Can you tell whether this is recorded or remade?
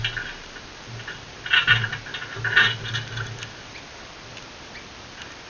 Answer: recorded